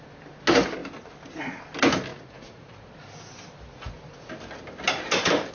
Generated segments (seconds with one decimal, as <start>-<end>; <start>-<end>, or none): 2.1-2.8; 3.7-4.3